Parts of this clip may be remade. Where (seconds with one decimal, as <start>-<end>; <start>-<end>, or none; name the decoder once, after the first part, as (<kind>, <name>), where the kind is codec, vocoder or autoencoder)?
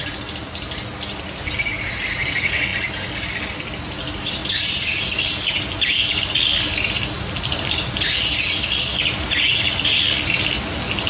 none